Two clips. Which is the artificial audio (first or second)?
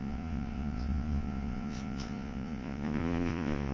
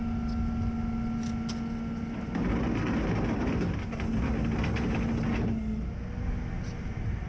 first